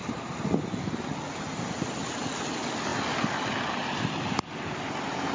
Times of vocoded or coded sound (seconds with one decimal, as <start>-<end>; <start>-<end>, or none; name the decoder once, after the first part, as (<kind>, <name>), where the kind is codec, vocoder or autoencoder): none